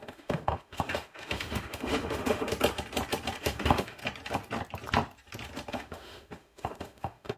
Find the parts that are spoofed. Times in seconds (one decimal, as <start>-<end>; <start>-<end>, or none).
0.0-2.5; 3.4-4.0; 5.7-7.4

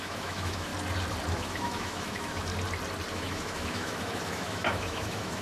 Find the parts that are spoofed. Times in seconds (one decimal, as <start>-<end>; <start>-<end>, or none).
0.0-0.7; 1.3-2.5; 3.1-5.4